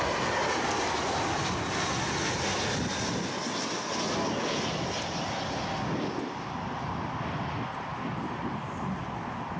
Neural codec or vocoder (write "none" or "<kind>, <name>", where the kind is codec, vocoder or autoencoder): none